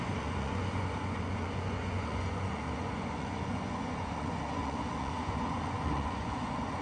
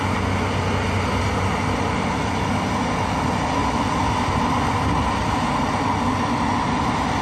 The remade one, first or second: first